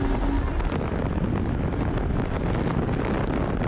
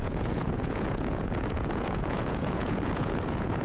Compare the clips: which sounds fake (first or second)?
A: second